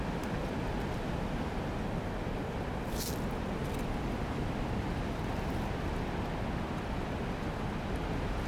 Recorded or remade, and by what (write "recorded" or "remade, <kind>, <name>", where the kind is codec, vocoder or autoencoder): recorded